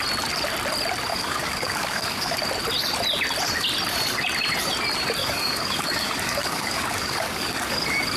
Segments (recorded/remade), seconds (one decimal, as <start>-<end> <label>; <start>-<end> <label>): 0.0-1.1 recorded; 1.1-2.5 remade; 2.5-5.2 recorded; 5.2-8.2 remade